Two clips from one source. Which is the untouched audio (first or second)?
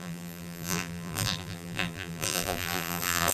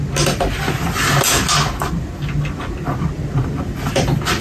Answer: second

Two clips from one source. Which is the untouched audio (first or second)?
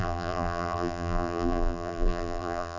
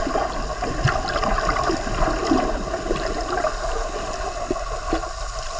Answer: second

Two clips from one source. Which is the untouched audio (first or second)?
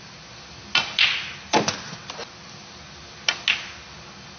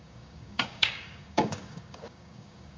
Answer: first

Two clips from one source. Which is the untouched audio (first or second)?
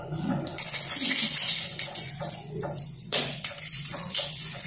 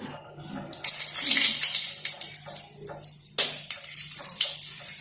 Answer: second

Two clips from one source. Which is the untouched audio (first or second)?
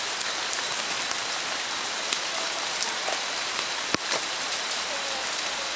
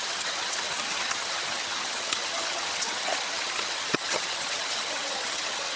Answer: first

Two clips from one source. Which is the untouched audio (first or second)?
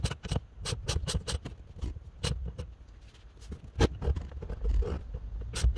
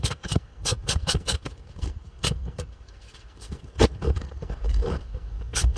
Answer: first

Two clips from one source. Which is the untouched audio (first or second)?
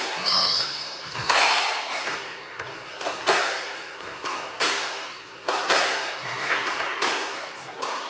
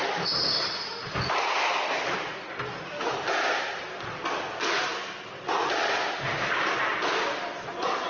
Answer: second